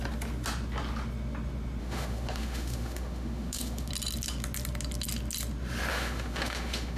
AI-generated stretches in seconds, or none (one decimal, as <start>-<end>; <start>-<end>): 1.8-3.9; 5.9-7.0